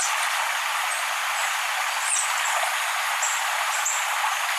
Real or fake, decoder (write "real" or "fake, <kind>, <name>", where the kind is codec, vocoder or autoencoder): real